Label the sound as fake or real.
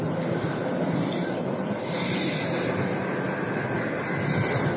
real